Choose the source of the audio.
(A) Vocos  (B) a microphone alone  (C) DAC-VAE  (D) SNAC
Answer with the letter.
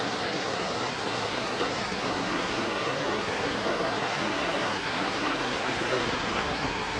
D